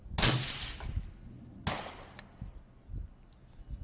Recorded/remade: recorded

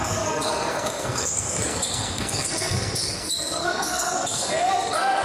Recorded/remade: remade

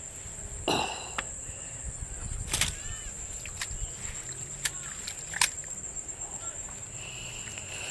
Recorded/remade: recorded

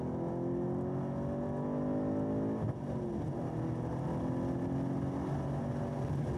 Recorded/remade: recorded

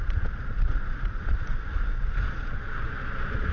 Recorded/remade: remade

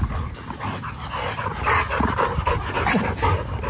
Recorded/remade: recorded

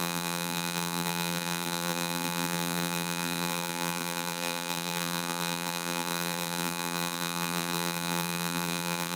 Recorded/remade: remade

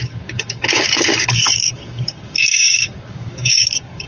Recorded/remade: remade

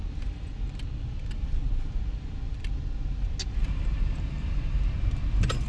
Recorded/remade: recorded